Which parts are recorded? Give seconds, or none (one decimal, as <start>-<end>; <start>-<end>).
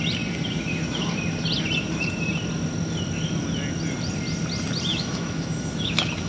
0.0-4.9